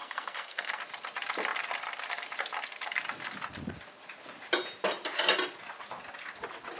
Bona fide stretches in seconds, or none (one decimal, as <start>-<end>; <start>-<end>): 0.8-6.8